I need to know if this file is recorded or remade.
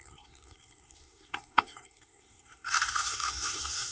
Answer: remade